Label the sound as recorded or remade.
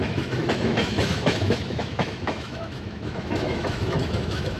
remade